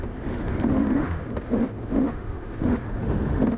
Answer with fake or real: fake